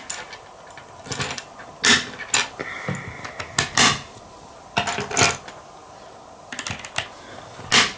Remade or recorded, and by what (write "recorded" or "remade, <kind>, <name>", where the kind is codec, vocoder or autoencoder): recorded